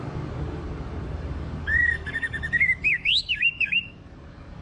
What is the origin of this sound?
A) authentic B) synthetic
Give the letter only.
B